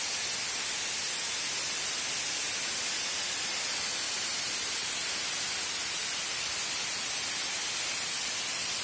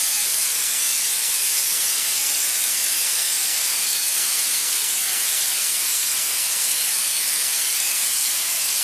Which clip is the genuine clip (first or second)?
first